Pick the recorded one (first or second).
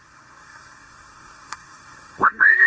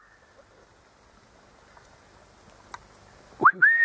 second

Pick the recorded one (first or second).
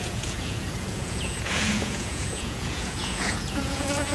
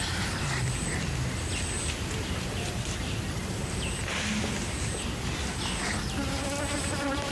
second